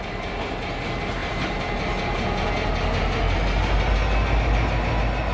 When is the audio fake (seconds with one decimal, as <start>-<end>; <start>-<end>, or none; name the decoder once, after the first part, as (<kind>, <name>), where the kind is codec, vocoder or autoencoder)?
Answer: none